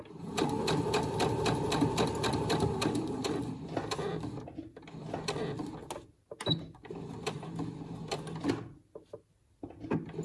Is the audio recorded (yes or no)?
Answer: yes